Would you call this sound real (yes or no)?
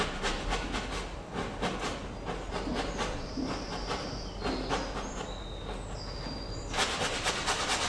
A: yes